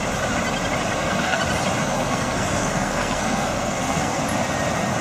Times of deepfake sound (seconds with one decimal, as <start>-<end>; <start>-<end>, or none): 0.9-1.4; 1.8-4.2